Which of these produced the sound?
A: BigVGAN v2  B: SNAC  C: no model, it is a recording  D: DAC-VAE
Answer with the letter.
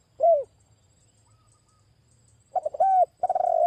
C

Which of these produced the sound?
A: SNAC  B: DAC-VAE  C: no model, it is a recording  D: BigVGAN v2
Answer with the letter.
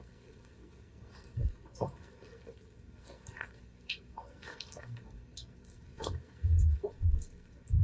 A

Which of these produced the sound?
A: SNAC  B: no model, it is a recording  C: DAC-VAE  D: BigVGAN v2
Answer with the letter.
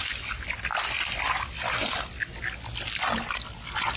B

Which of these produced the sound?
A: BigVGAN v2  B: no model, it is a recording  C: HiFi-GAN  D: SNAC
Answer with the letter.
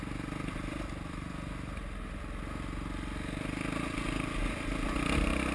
B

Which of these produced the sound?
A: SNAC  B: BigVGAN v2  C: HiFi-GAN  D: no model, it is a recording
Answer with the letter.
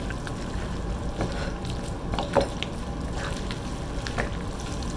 D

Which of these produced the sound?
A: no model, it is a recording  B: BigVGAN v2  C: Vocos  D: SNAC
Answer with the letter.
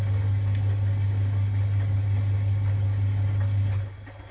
A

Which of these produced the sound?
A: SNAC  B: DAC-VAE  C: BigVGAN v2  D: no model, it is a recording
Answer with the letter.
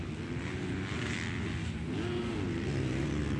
D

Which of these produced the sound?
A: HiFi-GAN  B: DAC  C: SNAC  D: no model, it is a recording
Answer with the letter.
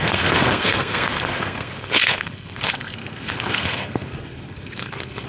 C